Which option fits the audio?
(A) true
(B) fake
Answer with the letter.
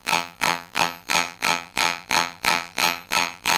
B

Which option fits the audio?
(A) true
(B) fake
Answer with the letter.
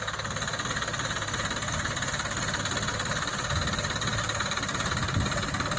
A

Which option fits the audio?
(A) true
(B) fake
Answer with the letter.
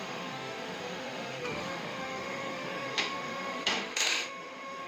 B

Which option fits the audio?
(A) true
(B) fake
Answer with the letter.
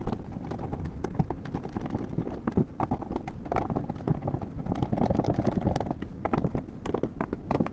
A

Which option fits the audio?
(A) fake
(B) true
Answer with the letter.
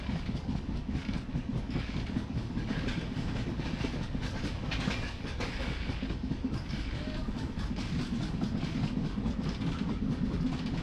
A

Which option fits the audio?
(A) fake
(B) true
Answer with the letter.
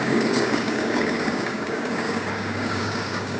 A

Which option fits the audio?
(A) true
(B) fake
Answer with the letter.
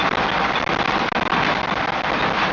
A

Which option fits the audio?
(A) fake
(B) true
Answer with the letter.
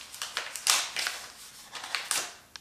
B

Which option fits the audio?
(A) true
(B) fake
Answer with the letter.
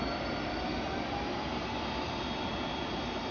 A